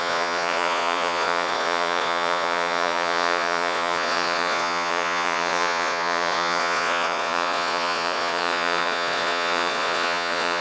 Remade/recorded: remade